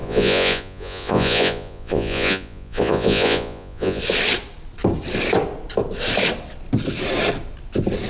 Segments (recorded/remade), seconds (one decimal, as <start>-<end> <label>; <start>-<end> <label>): 0.0-4.0 remade; 4.0-8.1 recorded